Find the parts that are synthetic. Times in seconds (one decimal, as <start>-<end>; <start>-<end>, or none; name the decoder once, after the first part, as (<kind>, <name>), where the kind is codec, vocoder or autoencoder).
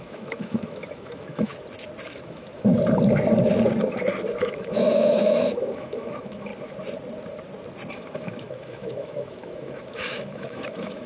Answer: 0.0-1.5 (autoencoder, DAC-VAE); 2.1-2.7; 4.4-6.5; 7.9-11.1